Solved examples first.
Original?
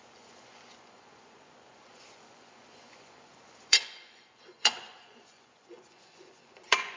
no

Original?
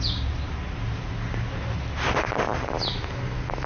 yes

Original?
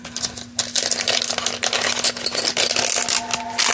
yes